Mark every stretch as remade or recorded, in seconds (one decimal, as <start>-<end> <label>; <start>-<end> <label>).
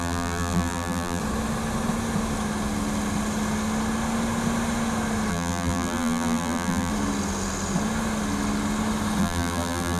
0.0-1.2 remade; 1.2-5.3 recorded; 5.3-6.9 remade; 6.9-9.2 recorded; 9.2-10.0 remade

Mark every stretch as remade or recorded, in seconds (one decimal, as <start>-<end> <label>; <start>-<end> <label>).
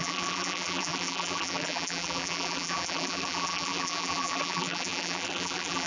0.0-5.9 remade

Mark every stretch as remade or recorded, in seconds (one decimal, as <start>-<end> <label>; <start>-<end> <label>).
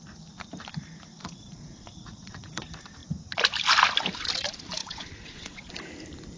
0.0-1.2 recorded; 1.2-2.6 remade; 2.6-4.8 recorded; 4.8-5.7 remade; 5.7-6.4 recorded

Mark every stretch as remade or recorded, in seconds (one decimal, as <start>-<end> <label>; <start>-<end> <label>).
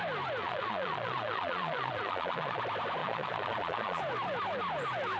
0.0-0.4 recorded; 0.4-2.6 remade; 2.6-3.0 recorded; 3.0-4.0 remade; 4.0-5.2 recorded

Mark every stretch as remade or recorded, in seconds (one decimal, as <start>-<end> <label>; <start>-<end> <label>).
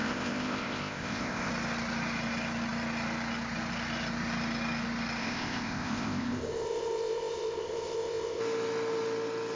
0.0-1.5 remade; 1.5-5.2 recorded; 5.2-8.4 remade; 8.4-9.6 recorded